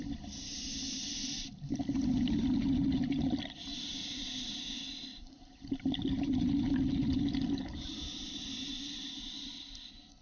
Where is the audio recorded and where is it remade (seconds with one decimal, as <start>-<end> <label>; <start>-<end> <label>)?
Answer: 0.0-3.7 recorded; 3.7-4.6 remade; 4.6-5.1 recorded; 5.1-6.5 remade; 6.5-10.2 recorded